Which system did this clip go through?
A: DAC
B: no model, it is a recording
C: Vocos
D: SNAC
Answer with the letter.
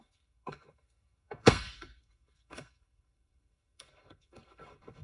D